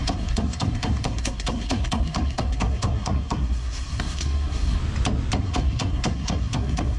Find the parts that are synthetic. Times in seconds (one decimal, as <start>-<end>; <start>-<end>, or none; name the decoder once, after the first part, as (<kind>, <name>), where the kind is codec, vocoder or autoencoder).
0.0-4.8 (codec, SNAC); 5.4-7.0